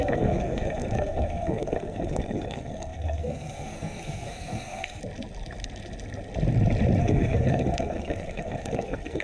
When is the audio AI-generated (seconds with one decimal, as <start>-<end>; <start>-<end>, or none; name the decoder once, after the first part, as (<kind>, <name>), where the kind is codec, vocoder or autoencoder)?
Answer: 0.0-5.0 (codec, SNAC); 7.0-9.2